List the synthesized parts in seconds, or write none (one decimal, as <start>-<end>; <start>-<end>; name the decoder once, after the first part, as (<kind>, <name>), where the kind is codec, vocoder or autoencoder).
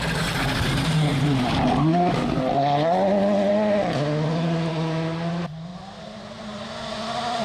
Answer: none